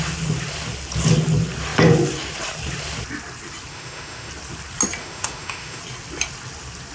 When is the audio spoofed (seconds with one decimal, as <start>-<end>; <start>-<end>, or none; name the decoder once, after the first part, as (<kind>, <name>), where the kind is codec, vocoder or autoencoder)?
3.7-4.3 (autoencoder, DAC-VAE); 5.0-5.8